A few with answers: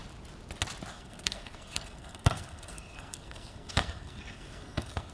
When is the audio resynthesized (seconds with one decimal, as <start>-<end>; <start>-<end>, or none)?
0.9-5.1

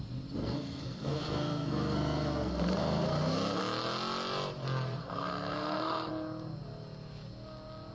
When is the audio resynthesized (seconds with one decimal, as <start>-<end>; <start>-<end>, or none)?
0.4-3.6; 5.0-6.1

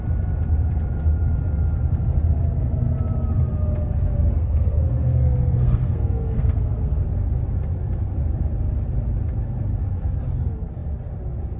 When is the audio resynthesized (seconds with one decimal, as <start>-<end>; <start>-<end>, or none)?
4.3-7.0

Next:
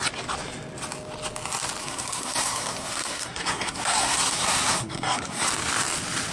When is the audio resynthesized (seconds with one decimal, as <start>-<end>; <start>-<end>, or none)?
1.8-5.5

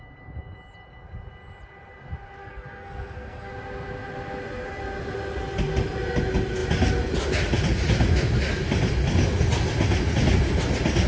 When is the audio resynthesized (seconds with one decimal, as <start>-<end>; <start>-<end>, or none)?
2.4-3.5

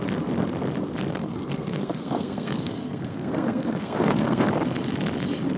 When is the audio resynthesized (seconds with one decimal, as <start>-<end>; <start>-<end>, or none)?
1.1-4.5

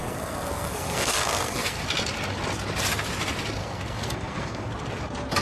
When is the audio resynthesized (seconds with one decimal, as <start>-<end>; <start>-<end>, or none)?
0.0-1.8; 3.6-4.7